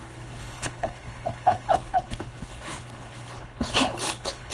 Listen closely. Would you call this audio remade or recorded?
remade